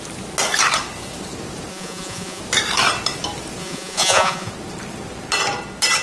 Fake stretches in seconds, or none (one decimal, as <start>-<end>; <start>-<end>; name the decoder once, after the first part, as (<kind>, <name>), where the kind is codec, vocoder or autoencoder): 1.7-2.4 (vocoder, Vocos); 3.6-4.5

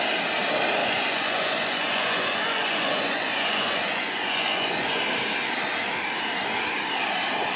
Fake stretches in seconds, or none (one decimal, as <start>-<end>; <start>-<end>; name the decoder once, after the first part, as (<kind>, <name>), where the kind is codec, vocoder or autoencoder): 0.8-5.0 (vocoder, Vocos)

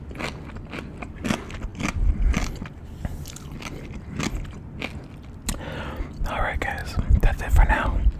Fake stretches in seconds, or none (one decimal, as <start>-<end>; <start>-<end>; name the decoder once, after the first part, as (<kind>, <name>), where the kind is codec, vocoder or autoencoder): 1.7-2.8 (vocoder, BigVGAN v2)

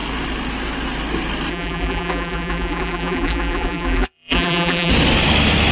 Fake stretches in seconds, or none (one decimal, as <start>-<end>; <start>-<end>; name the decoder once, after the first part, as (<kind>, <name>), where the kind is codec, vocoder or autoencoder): 1.5-4.9 (vocoder, BigVGAN v2)

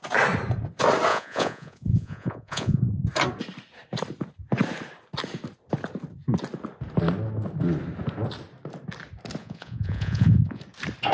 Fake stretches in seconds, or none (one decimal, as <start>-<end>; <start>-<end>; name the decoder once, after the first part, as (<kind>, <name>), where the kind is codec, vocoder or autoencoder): 1.1-2.8 (vocoder, Vocos); 9.4-10.6

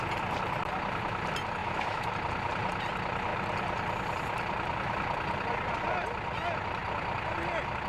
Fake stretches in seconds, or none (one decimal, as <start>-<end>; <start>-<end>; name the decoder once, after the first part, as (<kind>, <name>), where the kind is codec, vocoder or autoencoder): 1.6-2.1 (autoencoder, DAC-VAE)

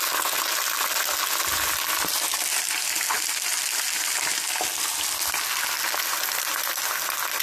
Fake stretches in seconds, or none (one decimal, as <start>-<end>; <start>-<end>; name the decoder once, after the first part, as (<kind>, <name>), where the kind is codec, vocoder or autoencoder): none